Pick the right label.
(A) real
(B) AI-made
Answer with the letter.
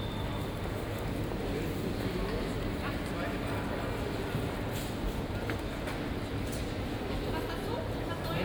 A